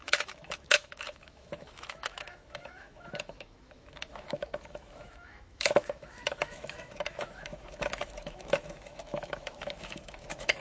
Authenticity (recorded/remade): remade